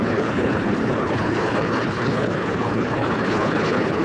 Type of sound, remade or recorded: remade